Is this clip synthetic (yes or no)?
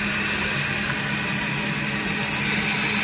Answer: no